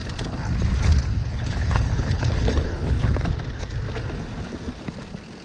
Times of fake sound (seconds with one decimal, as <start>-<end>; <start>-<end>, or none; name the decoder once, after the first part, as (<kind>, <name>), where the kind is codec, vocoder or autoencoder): 1.1-3.0 (codec, HILCodec)